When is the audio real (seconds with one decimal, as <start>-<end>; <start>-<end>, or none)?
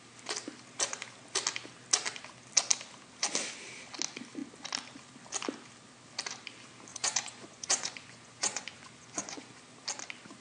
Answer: 0.0-6.9; 9.6-10.4